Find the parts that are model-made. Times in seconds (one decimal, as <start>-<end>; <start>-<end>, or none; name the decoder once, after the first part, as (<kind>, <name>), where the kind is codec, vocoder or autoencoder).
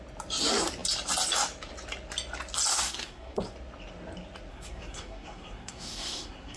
2.7-3.4 (codec, SNAC); 4.5-6.6